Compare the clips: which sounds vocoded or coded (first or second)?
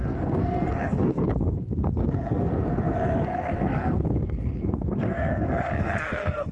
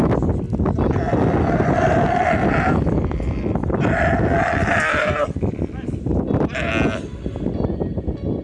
first